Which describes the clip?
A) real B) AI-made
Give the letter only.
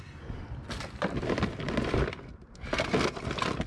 A